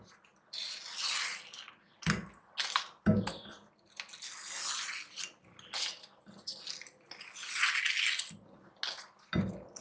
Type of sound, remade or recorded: recorded